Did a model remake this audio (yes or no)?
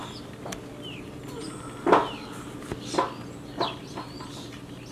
no